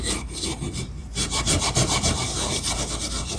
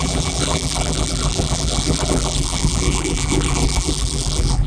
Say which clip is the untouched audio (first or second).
first